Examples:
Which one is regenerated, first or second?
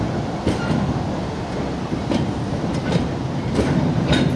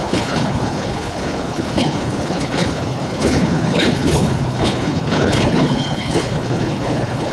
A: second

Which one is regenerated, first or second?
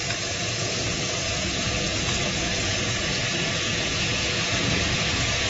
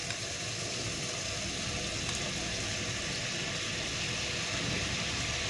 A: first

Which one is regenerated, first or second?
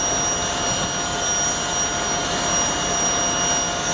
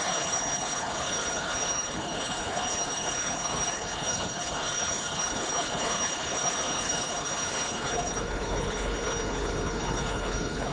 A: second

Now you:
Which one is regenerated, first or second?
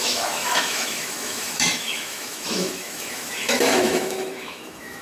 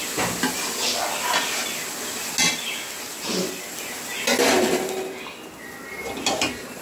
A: first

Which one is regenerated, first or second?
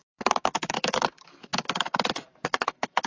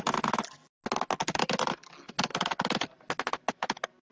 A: first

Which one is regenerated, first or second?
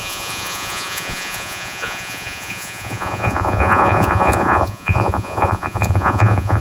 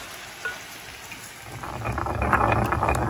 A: first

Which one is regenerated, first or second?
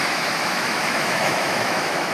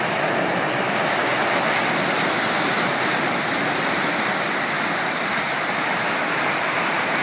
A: first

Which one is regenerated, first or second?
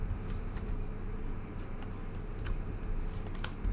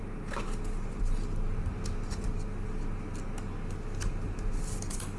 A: first